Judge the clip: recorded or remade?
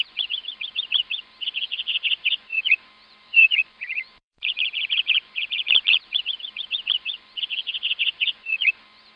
remade